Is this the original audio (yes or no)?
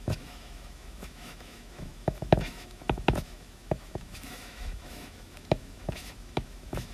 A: no